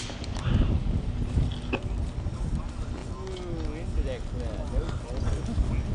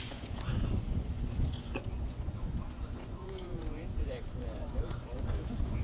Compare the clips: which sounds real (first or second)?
first